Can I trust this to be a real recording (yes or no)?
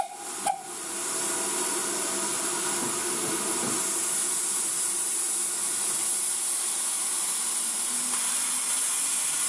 yes